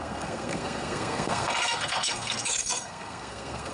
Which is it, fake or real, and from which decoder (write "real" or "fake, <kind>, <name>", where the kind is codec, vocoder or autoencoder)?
fake, codec, SNAC